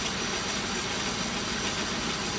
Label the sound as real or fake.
real